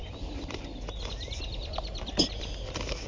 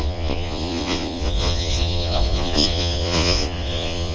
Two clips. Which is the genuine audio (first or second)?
first